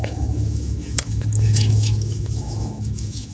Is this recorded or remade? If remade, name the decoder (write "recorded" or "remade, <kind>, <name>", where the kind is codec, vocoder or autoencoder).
remade, autoencoder, DAC-VAE